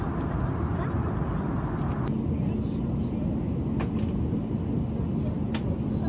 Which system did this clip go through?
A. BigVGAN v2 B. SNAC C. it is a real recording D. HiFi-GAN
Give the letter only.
C